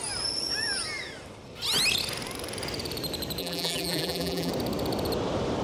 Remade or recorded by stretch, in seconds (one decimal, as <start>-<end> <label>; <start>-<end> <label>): 0.0-3.4 recorded; 3.4-4.5 remade; 4.5-5.6 recorded